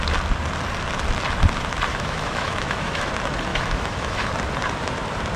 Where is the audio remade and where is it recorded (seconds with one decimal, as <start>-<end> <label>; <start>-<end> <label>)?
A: 0.0-1.9 recorded; 1.9-3.1 remade; 3.1-3.5 recorded; 3.5-4.3 remade; 4.3-5.4 recorded